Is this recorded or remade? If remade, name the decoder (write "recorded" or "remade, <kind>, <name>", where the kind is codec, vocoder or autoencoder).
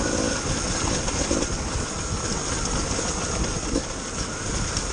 recorded